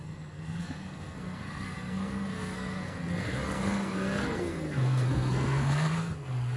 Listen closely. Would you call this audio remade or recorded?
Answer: remade